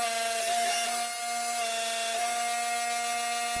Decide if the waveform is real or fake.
real